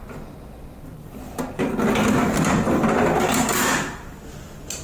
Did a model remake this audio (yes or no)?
no